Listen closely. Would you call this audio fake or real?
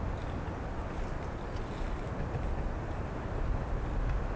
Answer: real